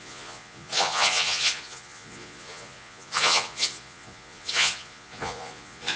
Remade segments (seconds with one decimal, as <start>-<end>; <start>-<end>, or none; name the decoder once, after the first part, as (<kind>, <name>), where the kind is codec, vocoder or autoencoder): 0.0-6.0 (vocoder, Vocos)